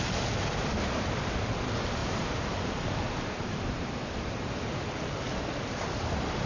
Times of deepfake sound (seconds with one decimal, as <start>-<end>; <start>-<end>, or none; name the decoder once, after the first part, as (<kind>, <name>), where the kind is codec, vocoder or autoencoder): 2.0-4.5 (vocoder, BigVGAN v2)